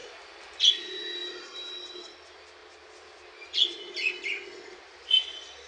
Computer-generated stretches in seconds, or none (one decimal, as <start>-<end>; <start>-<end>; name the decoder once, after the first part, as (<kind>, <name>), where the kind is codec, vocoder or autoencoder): none